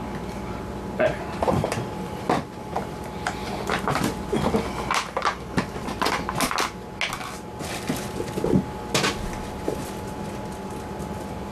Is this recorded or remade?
recorded